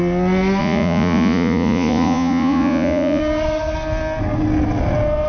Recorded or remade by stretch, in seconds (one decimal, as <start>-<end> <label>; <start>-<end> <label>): 0.0-0.6 recorded; 0.6-3.2 remade; 3.2-5.3 recorded